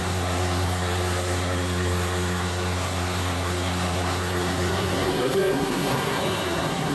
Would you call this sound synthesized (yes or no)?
yes